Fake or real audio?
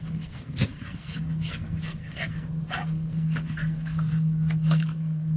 fake